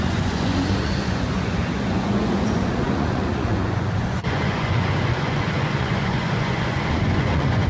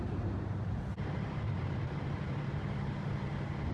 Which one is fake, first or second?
first